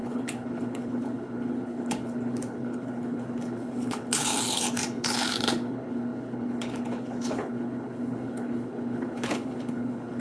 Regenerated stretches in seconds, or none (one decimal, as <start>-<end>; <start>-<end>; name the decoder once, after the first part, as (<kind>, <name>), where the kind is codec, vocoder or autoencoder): 0.0-10.2 (codec, HILCodec)